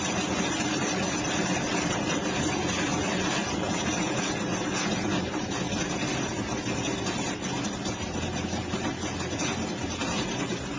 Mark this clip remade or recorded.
recorded